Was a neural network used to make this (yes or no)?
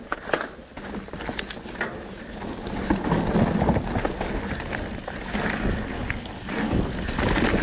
no